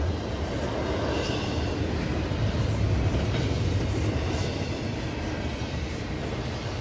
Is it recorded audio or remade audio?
recorded